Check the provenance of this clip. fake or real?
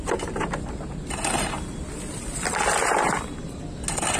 real